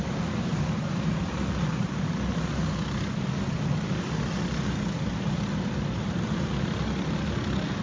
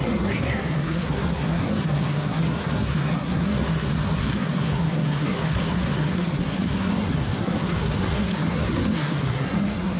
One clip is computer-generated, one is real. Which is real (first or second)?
first